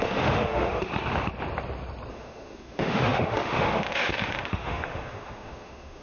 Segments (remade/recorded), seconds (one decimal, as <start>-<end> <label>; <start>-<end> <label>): 0.0-0.9 remade; 0.9-2.1 recorded; 2.1-6.0 remade